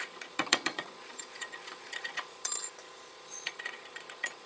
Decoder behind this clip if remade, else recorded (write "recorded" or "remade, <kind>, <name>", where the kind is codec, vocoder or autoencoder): remade, vocoder, Vocos